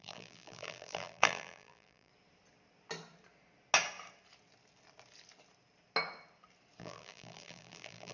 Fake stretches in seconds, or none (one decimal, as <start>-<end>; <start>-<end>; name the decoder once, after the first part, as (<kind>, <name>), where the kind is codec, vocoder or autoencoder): 0.0-2.1 (vocoder, BigVGAN v2); 6.8-8.1